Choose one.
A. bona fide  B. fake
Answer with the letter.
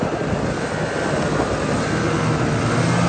A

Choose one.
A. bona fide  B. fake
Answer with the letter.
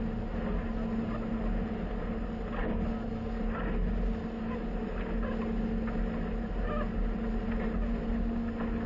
A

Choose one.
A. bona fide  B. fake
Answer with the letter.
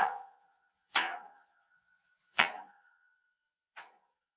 B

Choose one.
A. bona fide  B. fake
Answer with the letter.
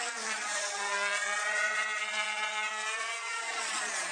B